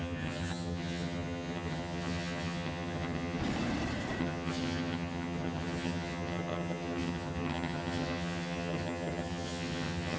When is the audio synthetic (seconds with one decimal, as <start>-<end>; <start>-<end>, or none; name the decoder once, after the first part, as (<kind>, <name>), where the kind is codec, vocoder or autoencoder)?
0.0-3.4 (vocoder, HiFi-GAN); 4.2-10.2